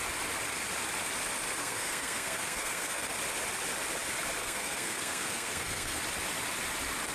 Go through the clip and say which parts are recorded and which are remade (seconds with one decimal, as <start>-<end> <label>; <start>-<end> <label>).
0.0-1.6 recorded; 1.6-3.1 remade; 3.1-4.4 recorded; 4.4-6.0 remade; 6.0-7.1 recorded